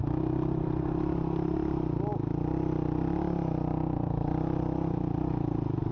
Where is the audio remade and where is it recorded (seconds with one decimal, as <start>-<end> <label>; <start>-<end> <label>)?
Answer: 0.0-5.9 recorded